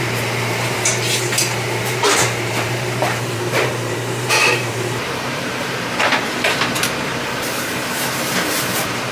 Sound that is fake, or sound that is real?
fake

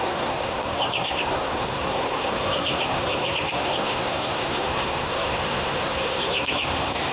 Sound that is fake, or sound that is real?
fake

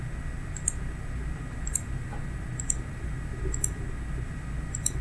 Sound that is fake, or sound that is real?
real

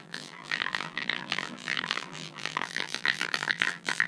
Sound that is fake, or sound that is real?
fake